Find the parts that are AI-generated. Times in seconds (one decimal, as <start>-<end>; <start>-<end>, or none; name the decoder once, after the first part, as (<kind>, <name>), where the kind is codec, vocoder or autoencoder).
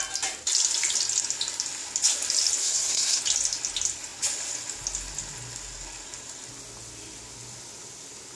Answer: 2.6-3.2 (codec, SNAC)